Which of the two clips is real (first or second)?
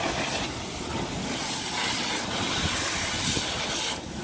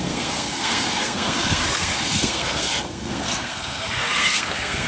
first